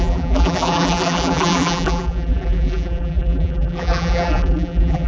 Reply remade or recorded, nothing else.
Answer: remade